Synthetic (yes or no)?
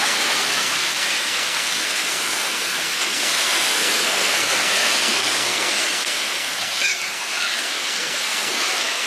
yes